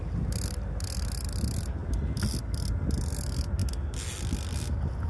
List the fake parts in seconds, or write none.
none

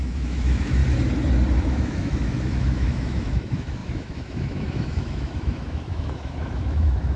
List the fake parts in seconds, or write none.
0.0-0.8; 1.6-7.2

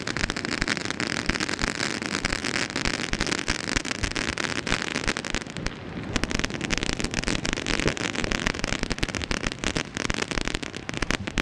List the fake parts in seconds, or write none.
none

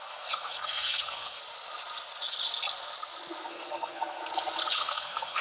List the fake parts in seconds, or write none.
0.0-1.4; 3.5-4.2; 4.8-5.4

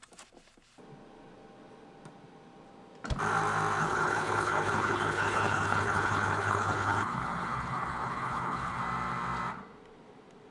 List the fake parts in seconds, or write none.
3.8-8.8